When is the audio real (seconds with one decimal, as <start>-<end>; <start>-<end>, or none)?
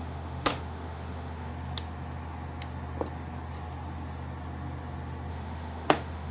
1.5-5.3